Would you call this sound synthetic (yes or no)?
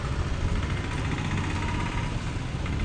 no